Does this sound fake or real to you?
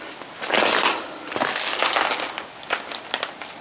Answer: real